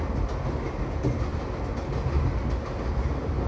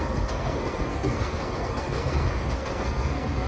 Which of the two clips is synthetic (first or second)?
second